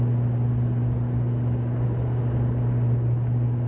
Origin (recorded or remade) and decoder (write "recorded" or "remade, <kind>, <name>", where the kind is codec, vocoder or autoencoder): recorded